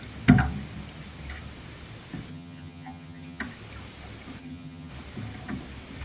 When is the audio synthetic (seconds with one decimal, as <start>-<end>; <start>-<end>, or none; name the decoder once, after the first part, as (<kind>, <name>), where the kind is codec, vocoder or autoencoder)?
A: 2.3-3.4 (vocoder, HiFi-GAN); 4.4-4.9